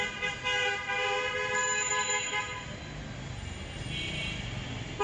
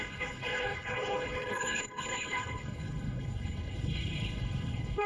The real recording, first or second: first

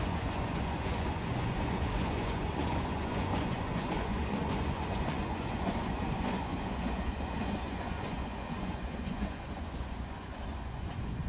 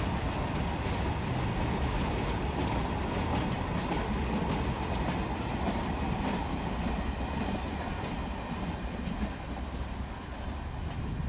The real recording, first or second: second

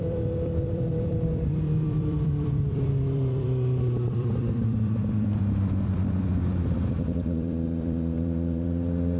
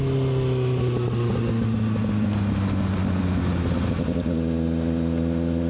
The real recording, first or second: second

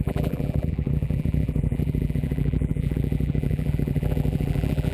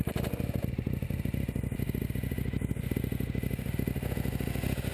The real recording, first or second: second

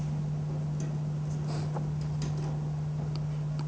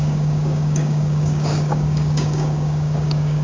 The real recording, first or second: first